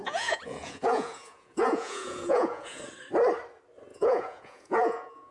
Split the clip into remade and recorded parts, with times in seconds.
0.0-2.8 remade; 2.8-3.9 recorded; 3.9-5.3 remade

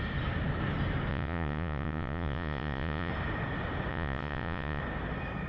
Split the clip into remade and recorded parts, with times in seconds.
0.0-1.1 recorded; 1.1-3.1 remade; 3.1-3.9 recorded; 3.9-4.8 remade; 4.8-5.5 recorded

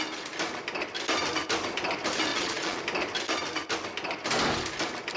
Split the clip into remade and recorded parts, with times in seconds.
0.0-2.3 recorded; 2.3-2.8 remade; 2.8-5.2 recorded

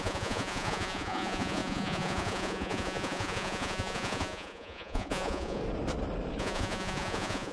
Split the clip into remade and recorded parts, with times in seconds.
0.0-5.6 remade; 5.6-6.4 recorded; 6.4-7.5 remade

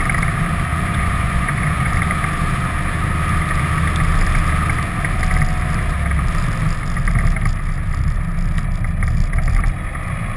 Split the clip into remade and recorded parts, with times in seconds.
0.0-0.7 recorded; 0.7-1.9 remade; 1.9-10.4 recorded

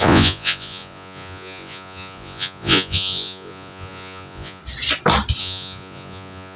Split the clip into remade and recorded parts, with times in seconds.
0.0-4.6 remade; 4.6-5.4 recorded; 5.4-6.6 remade

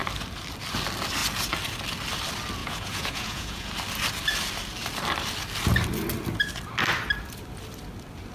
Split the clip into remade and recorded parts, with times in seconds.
0.0-2.6 recorded; 2.6-3.7 remade; 3.7-8.3 recorded